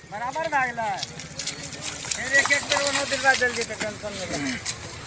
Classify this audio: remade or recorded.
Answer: recorded